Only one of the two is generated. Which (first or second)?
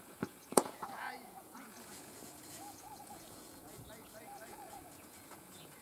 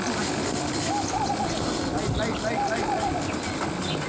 first